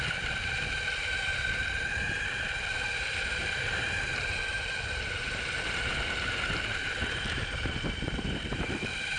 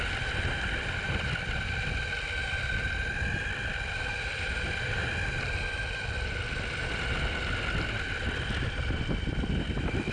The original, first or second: second